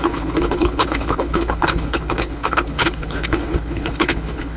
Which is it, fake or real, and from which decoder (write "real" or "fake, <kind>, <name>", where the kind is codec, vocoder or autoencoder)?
fake, codec, HILCodec